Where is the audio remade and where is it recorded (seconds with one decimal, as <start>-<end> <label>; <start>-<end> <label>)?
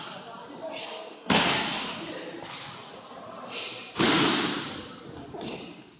0.0-0.8 recorded; 0.8-1.9 remade; 1.9-6.0 recorded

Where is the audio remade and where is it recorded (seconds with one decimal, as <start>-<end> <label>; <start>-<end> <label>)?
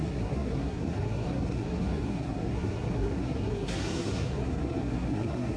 0.0-5.6 remade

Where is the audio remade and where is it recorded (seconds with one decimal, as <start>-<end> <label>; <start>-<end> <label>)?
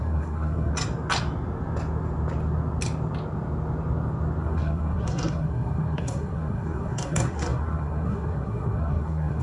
0.0-0.7 remade; 0.7-4.4 recorded; 4.4-9.4 remade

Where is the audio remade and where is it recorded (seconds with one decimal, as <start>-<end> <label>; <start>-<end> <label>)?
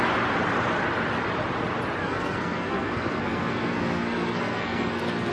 0.0-2.0 recorded; 2.0-5.3 remade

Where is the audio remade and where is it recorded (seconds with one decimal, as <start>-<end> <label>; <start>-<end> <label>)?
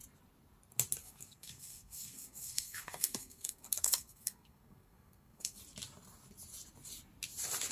0.0-1.0 recorded; 1.0-5.6 remade; 5.6-7.7 recorded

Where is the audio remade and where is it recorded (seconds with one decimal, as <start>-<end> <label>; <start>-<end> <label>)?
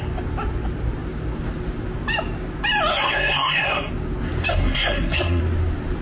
0.0-2.9 recorded; 2.9-3.9 remade; 3.9-4.5 recorded; 4.5-5.4 remade; 5.4-6.0 recorded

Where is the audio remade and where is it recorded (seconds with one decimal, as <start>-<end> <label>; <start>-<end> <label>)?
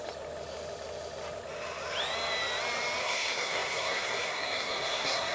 0.0-3.0 recorded; 3.0-5.3 remade